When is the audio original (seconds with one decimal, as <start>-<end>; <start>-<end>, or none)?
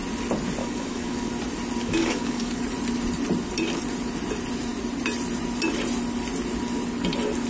0.0-0.6; 1.3-1.8; 2.6-7.5